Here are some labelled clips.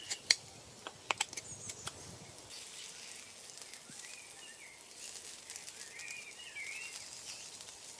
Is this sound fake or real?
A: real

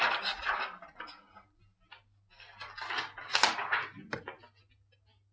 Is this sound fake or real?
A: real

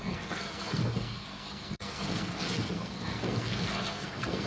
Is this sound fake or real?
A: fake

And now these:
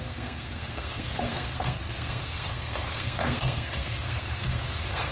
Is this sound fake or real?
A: fake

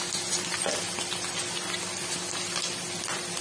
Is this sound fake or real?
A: real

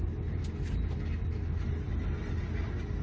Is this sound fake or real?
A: real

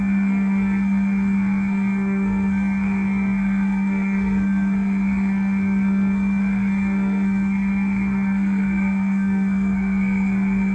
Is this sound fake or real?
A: fake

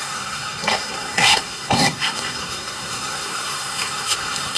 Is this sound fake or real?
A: fake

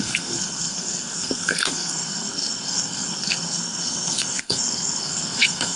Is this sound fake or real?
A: fake